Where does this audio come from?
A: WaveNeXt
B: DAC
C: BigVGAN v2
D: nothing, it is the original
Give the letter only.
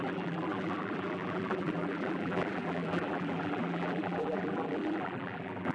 C